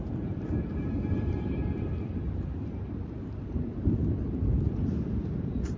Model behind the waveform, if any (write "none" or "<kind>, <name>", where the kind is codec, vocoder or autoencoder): vocoder, BigVGAN v2